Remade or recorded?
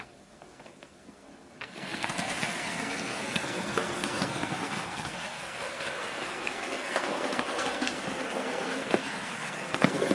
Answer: remade